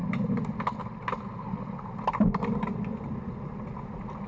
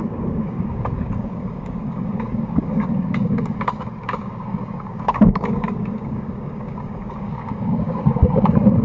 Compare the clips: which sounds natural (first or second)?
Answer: first